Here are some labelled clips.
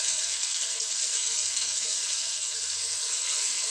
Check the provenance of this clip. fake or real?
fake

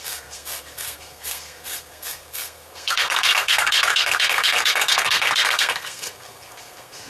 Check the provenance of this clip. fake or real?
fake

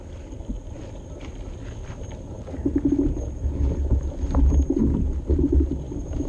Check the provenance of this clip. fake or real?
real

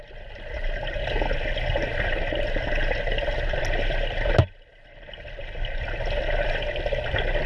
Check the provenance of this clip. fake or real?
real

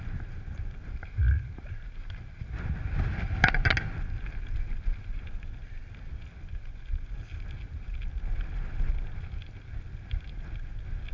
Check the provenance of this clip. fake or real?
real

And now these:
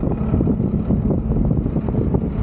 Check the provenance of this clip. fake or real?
real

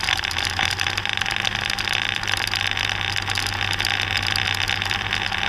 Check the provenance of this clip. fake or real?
real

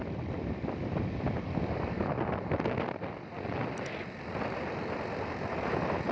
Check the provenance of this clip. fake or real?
real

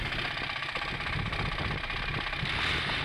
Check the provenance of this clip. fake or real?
real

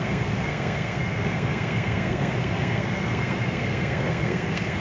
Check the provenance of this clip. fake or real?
fake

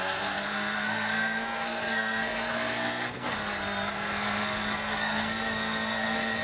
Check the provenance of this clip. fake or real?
fake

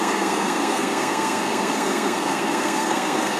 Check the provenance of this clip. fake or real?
fake